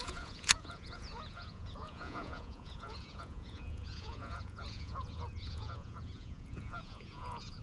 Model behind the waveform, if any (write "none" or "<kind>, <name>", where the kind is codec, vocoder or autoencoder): vocoder, Vocos